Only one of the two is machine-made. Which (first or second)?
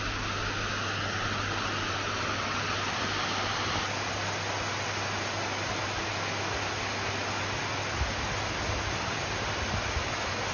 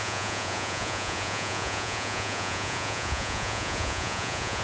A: second